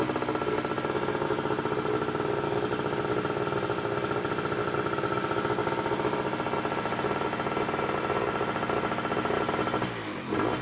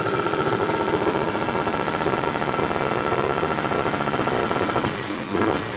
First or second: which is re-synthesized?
second